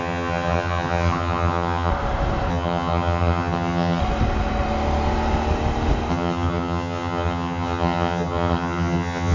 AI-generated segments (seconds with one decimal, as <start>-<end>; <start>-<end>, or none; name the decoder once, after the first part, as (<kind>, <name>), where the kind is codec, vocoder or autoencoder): 0.0-1.9 (vocoder, HiFi-GAN); 2.5-4.0; 6.1-9.3

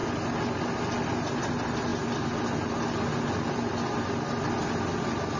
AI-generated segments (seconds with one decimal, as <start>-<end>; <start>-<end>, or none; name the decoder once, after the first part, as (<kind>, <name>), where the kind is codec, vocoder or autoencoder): none

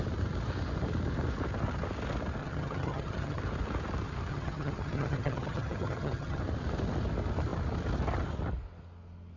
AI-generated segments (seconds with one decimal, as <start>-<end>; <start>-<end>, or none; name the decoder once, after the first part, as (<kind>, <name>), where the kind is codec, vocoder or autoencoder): 2.4-3.4 (vocoder, HiFi-GAN); 4.3-6.4

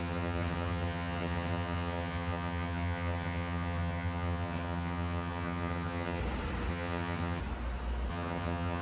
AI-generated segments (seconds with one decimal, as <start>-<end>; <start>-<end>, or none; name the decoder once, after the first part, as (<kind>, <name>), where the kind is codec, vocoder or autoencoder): 0.0-6.2 (vocoder, HiFi-GAN); 6.7-7.4; 8.1-8.8

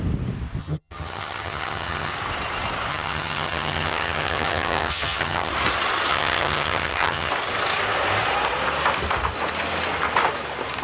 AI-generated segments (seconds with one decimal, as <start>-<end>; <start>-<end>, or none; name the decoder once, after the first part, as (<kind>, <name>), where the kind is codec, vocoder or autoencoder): 0.6-2.1 (vocoder, HiFi-GAN); 2.9-5.5; 6.1-7.3

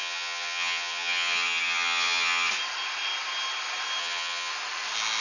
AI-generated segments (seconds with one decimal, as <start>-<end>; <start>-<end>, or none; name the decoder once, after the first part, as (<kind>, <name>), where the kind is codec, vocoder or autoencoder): 0.0-2.5 (vocoder, HiFi-GAN); 4.0-4.5